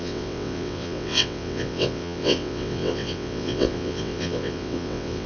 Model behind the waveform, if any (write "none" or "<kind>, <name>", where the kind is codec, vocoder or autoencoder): vocoder, WaveNeXt